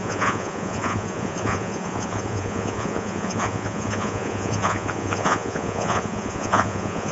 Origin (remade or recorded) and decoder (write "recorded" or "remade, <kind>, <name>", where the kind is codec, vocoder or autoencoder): remade, vocoder, Vocos